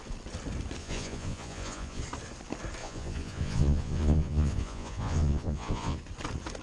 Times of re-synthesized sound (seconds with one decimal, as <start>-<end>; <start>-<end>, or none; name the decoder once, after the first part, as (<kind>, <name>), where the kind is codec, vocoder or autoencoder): 0.8-2.0 (vocoder, Vocos); 2.8-6.0